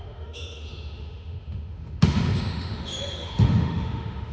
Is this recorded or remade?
remade